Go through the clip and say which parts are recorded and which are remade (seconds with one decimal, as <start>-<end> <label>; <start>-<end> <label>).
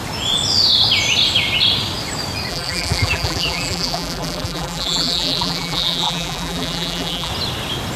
0.0-2.5 recorded; 2.5-7.3 remade; 7.3-8.0 recorded